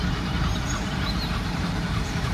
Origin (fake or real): fake